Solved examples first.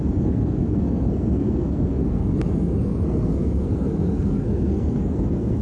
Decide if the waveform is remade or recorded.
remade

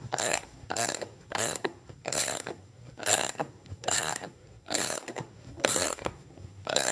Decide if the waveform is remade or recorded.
remade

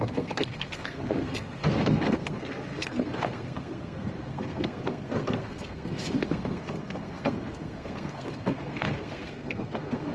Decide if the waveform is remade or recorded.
remade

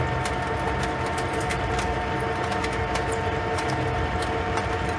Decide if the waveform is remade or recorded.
recorded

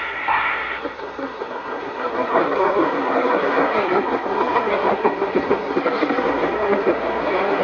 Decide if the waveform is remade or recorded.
remade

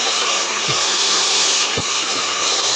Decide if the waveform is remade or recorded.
remade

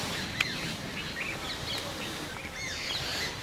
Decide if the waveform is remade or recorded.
recorded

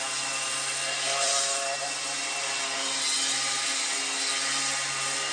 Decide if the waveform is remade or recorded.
recorded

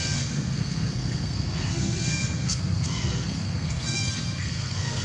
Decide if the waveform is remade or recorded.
remade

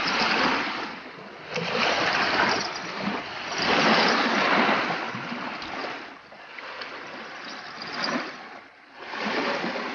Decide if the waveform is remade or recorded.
recorded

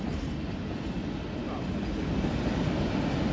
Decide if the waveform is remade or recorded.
recorded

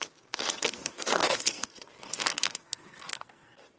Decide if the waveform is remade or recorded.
remade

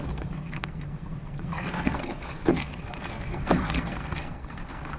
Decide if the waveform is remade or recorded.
remade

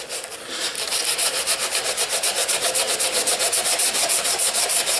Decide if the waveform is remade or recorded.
recorded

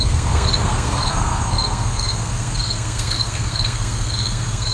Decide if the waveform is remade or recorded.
remade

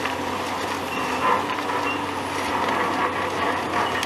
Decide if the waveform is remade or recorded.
recorded